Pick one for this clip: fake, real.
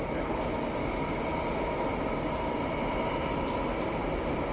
real